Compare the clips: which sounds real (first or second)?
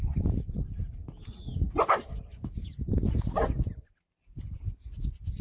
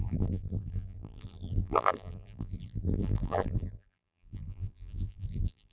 first